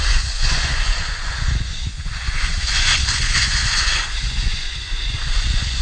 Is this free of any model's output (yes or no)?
no